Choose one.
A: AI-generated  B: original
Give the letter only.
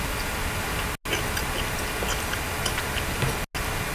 B